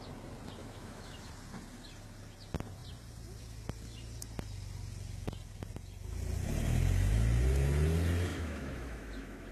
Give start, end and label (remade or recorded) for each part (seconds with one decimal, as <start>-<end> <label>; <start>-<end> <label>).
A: 0.0-0.6 recorded; 0.6-1.3 remade; 1.3-8.3 recorded; 8.3-9.5 remade